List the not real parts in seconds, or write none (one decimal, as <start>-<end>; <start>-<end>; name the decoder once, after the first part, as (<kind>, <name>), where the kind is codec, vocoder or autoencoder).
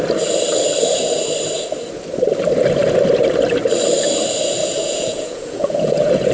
4.6-6.3 (vocoder, Vocos)